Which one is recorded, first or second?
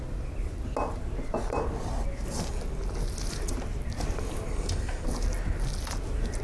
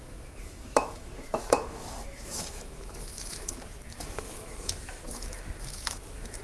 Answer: first